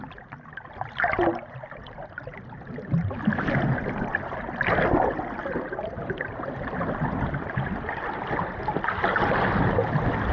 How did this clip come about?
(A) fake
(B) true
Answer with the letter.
B